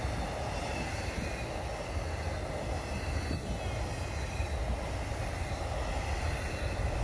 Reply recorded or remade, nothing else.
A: recorded